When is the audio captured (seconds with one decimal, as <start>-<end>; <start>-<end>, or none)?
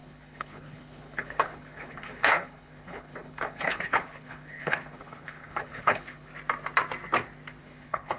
6.3-7.6